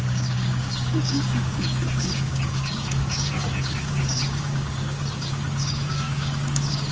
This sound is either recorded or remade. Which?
remade